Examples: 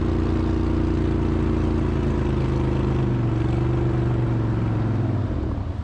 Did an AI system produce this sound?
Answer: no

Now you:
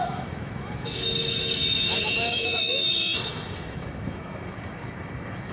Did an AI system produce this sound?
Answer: yes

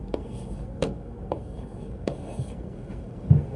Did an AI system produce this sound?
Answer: yes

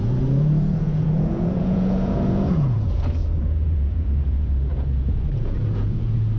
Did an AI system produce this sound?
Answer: yes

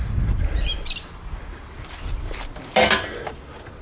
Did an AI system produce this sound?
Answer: no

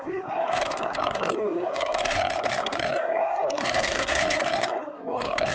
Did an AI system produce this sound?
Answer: yes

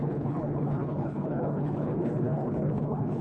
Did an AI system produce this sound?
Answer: yes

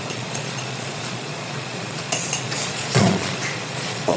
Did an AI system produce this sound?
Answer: yes